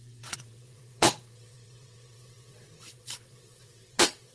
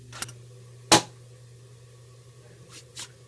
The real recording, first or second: second